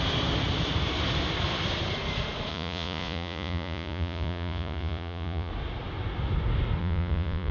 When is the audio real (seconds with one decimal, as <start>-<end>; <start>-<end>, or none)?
0.0-2.5; 5.5-6.8

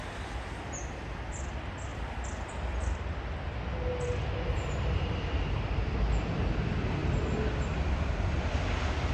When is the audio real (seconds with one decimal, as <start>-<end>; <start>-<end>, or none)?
0.0-9.1

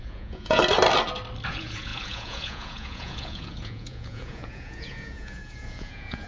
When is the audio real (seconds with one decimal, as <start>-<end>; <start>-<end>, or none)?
0.6-1.5

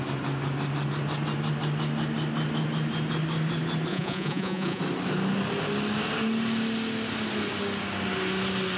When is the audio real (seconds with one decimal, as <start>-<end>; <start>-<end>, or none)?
0.0-3.9; 4.8-8.8

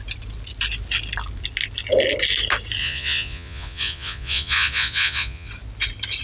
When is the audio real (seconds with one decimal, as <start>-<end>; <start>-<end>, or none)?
0.0-2.8; 5.5-6.2

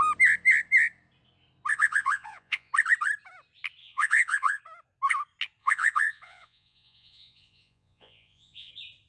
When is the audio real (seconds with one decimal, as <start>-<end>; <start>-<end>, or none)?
0.0-1.7; 2.7-3.8; 4.6-5.6; 8.7-9.1

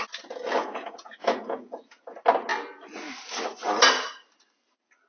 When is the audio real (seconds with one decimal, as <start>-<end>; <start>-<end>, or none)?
0.0-0.6; 2.0-5.1

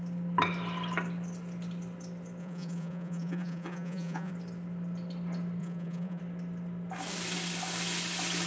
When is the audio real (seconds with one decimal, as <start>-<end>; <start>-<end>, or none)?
0.0-2.4; 4.3-5.6; 6.2-8.5